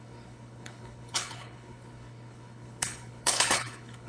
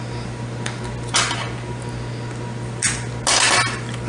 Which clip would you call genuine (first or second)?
second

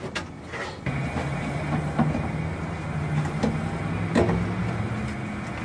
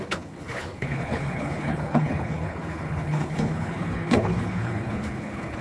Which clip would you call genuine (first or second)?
first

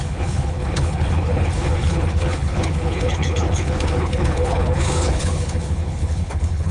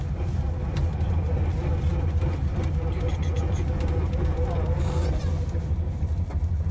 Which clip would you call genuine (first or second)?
second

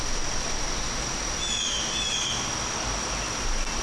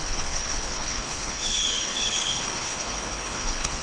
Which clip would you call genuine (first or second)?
first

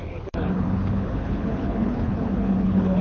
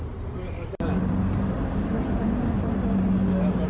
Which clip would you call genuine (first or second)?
second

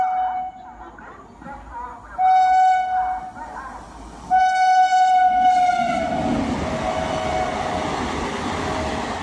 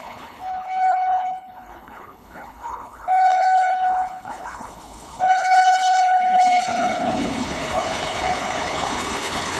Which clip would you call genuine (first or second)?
first